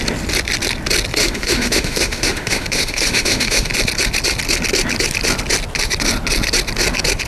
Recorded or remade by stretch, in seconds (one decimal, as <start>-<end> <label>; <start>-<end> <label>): 0.0-1.2 recorded; 1.2-3.7 remade; 3.7-7.3 recorded